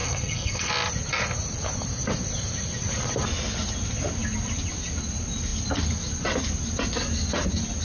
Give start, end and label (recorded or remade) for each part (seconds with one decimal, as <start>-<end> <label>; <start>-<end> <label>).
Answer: 0.0-0.7 remade; 0.7-7.8 recorded